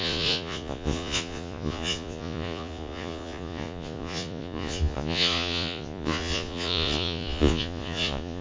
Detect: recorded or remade remade